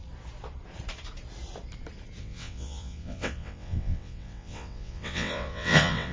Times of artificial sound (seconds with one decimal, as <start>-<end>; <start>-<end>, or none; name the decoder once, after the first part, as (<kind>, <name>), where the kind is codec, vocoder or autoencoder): 2.2-6.1 (vocoder, WaveNeXt)

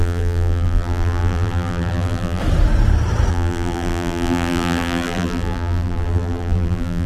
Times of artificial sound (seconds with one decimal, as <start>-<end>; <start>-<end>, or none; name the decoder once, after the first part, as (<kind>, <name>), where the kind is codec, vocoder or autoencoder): 0.0-2.4 (vocoder, BigVGAN v2); 3.3-7.1

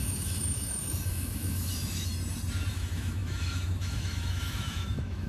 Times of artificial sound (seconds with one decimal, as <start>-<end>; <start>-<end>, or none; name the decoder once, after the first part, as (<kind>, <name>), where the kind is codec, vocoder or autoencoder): 0.0-2.1 (autoencoder, DAC-VAE); 2.7-5.3

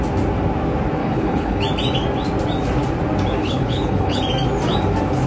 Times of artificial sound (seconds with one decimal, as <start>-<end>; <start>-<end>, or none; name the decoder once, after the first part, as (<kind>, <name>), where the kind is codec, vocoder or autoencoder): 1.0-1.6 (codec, HILCodec); 3.4-4.2

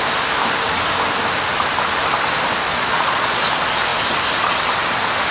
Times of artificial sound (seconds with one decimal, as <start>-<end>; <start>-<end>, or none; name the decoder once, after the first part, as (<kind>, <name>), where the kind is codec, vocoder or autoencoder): 2.7-3.4 (vocoder, Vocos)

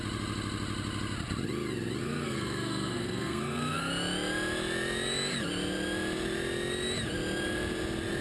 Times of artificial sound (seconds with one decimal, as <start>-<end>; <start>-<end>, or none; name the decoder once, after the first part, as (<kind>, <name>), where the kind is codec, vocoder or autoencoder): 2.0-3.8 (codec, SNAC)

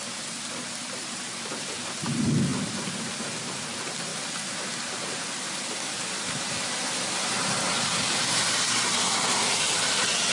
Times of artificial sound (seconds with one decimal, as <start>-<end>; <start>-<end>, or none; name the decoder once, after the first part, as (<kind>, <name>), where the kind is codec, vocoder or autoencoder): none

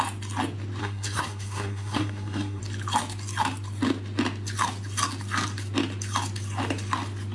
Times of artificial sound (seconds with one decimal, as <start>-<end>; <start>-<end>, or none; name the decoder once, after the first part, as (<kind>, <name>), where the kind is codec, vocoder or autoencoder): 0.8-2.6 (codec, SNAC)